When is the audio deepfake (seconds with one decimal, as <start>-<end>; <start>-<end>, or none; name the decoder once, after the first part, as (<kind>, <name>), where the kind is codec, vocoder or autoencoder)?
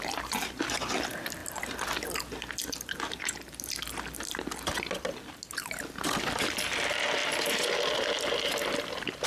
none